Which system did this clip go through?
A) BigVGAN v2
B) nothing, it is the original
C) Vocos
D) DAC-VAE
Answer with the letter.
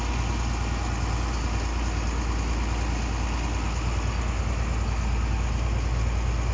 B